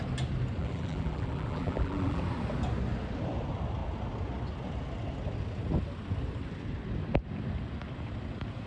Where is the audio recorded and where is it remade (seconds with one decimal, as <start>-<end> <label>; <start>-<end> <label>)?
0.0-0.6 recorded; 0.6-2.2 remade; 2.2-8.7 recorded

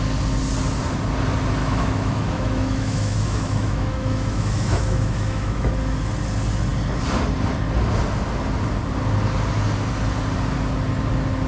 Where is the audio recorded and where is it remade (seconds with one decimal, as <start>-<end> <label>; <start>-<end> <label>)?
0.0-1.6 recorded; 1.6-5.7 remade; 5.7-11.5 recorded

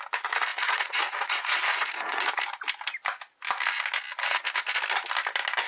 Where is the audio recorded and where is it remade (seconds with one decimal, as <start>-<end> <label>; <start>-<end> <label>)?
0.0-0.5 recorded; 0.5-2.4 remade; 2.4-5.7 recorded

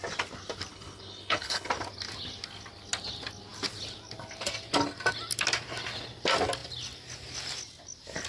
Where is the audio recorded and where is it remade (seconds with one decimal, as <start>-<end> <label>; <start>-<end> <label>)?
0.0-0.7 recorded; 0.7-1.7 remade; 1.7-8.3 recorded

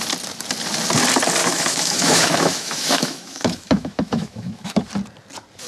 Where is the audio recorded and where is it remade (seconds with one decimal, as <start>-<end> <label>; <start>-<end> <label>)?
0.0-1.4 recorded; 1.4-4.8 remade; 4.8-5.7 recorded